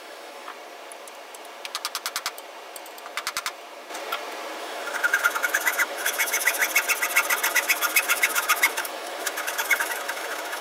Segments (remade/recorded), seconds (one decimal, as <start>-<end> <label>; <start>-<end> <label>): 0.0-0.5 remade; 0.5-4.6 recorded; 4.6-6.6 remade; 6.6-7.5 recorded; 7.5-10.6 remade